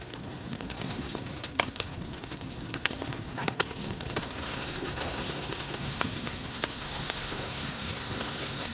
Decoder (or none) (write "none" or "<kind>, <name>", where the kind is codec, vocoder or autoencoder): codec, SNAC